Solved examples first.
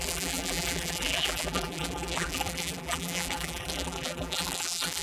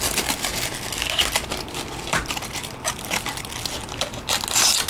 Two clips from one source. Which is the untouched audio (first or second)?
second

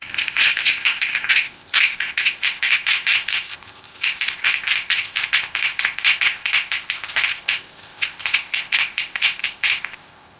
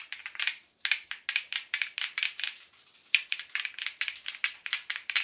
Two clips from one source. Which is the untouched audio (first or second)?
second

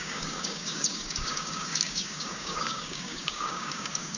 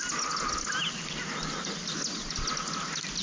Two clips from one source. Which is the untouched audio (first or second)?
second